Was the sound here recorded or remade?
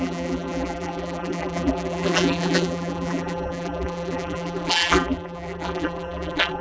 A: remade